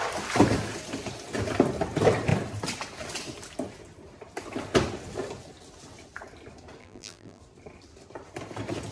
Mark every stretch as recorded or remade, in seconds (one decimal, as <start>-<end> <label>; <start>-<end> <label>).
0.0-6.8 recorded; 6.8-7.4 remade; 7.4-8.9 recorded